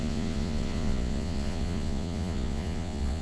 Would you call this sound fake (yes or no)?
yes